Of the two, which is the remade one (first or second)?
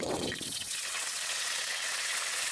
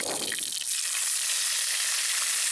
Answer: first